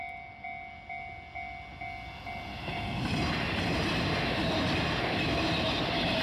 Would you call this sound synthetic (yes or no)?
no